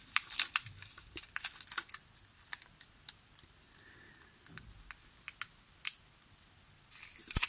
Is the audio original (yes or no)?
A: yes